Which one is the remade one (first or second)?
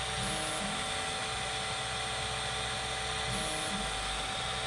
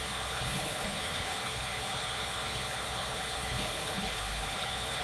second